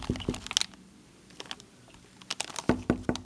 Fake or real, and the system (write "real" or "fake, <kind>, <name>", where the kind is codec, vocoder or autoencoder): real